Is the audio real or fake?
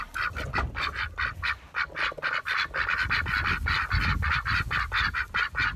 real